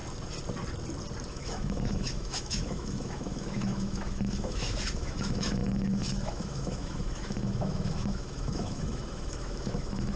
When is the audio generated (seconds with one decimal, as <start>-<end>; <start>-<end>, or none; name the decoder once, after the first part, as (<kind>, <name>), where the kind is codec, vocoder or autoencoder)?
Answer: 1.3-10.2 (autoencoder, DAC-VAE)